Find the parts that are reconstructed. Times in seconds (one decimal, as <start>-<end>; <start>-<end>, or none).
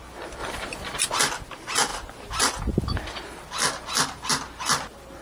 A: 0.4-1.2